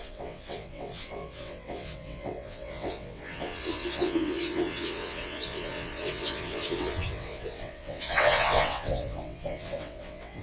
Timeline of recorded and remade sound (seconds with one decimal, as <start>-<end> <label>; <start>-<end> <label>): 0.0-10.4 remade